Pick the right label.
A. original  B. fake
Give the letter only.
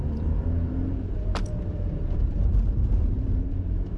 B